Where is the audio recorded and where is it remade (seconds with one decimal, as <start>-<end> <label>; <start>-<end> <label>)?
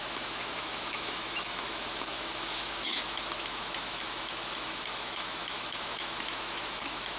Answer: 0.0-7.2 remade